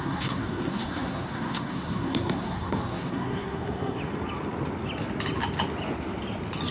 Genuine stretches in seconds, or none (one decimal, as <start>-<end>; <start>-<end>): 4.0-6.7